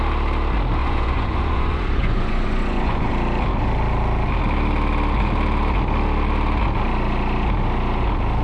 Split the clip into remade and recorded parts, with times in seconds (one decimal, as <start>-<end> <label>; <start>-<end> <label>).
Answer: 0.0-0.8 recorded; 0.8-3.1 remade; 3.1-8.4 recorded